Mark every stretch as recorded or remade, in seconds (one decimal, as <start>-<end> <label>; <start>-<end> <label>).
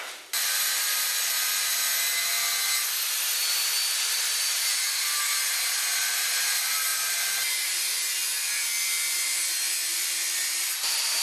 0.0-6.9 recorded; 6.9-7.7 remade; 7.7-11.2 recorded